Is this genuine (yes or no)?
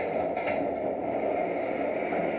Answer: yes